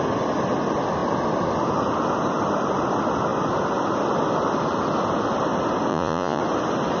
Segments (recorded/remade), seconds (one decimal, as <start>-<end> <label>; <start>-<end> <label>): 0.0-5.9 recorded; 5.9-6.4 remade; 6.4-7.0 recorded